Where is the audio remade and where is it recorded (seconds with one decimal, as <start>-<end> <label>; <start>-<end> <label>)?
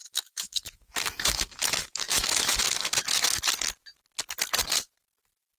0.0-3.4 remade; 3.4-5.6 recorded